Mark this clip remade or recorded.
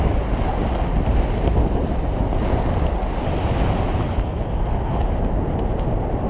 recorded